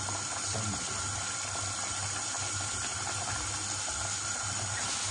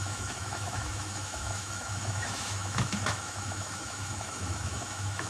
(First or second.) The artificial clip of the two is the second